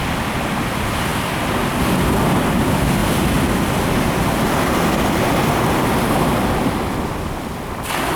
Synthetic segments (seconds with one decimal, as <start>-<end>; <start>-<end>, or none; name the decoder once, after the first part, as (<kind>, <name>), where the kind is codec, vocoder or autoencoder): none